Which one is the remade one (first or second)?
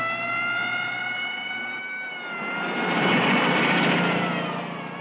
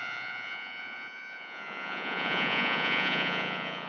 second